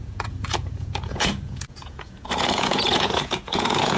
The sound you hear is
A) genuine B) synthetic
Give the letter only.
B